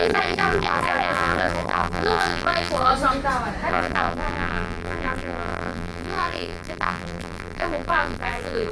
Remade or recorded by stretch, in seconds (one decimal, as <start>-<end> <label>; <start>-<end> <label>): 0.0-2.9 remade; 2.9-3.7 recorded; 3.7-8.7 remade